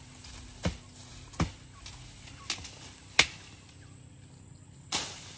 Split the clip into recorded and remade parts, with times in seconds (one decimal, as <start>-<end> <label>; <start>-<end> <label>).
0.0-5.4 recorded